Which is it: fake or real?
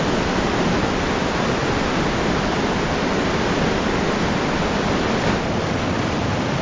fake